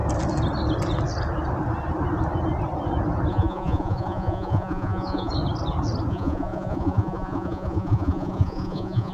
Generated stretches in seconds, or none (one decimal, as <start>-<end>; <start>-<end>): 3.3-5.3; 6.1-9.1